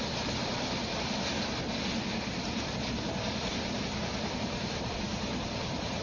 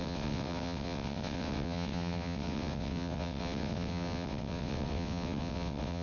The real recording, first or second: first